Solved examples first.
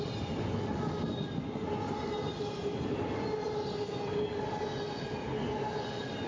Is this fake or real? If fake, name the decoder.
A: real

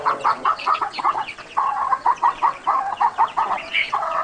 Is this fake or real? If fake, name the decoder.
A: fake, vocoder, WaveNeXt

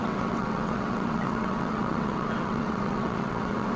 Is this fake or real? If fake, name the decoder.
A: fake, vocoder, WaveNeXt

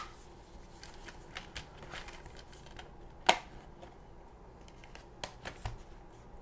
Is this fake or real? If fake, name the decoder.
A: real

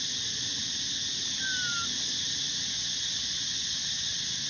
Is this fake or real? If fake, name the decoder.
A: real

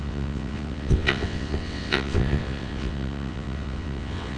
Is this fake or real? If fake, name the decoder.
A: fake, vocoder, WaveNeXt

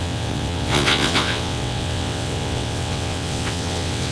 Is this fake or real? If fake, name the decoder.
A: fake, vocoder, WaveNeXt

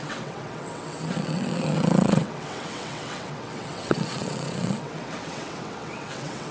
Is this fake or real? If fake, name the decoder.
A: fake, vocoder, WaveNeXt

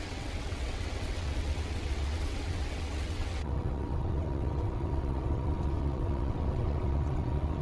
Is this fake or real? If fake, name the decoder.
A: fake, vocoder, WaveNeXt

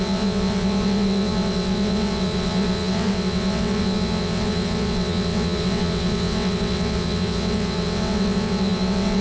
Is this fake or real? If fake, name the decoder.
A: fake, vocoder, WaveNeXt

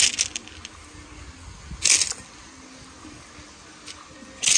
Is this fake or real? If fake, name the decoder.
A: real